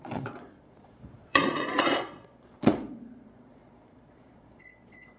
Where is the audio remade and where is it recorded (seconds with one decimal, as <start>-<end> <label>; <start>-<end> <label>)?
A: 0.0-5.2 remade